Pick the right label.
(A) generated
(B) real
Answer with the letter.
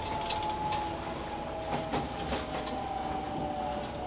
B